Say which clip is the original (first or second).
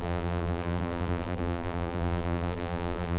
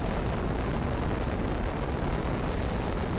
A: second